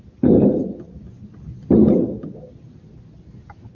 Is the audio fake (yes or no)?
no